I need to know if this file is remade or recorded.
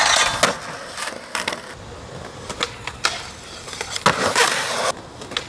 recorded